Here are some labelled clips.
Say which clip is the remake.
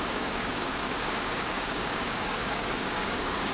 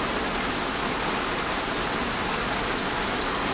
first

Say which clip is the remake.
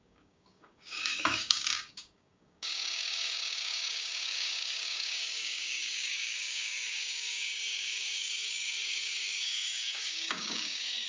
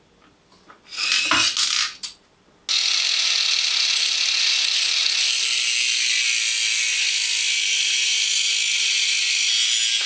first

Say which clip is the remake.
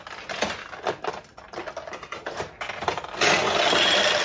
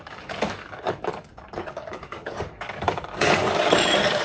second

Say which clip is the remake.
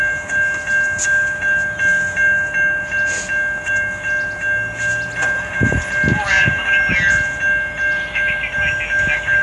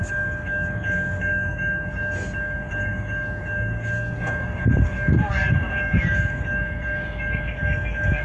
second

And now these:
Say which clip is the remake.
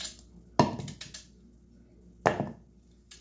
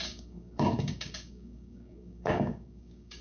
second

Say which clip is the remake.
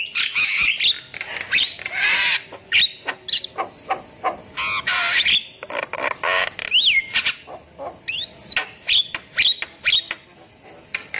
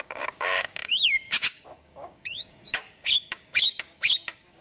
second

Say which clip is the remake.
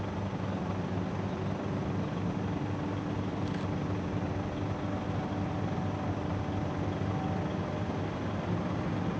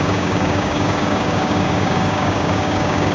second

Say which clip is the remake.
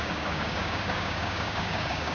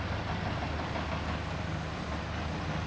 first